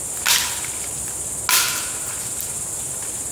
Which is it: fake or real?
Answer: real